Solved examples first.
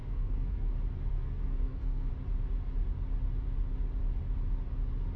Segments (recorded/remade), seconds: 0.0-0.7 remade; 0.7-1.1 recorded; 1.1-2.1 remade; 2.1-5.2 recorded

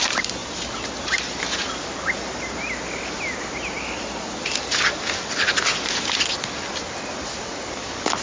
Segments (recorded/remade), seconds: 0.0-8.2 recorded

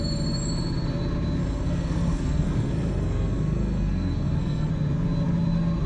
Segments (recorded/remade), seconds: 0.0-1.4 recorded; 1.4-4.7 remade; 4.7-5.9 recorded

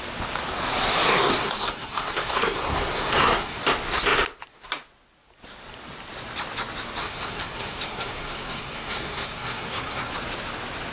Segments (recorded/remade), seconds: 0.0-1.3 recorded; 1.3-3.6 remade; 3.6-7.0 recorded; 7.0-10.1 remade; 10.1-10.9 recorded

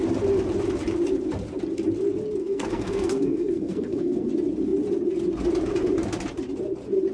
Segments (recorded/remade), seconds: 0.0-2.4 recorded; 2.4-4.3 remade; 4.3-7.1 recorded

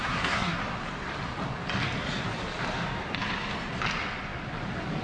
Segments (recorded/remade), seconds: 0.0-0.6 remade; 0.6-5.0 recorded

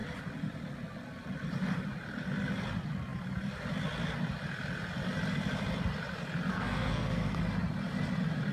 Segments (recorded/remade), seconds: 0.0-6.5 recorded; 6.5-7.4 remade; 7.4-8.5 recorded